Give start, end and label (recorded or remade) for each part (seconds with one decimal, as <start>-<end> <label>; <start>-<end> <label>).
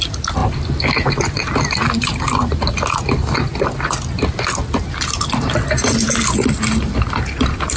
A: 0.0-7.8 recorded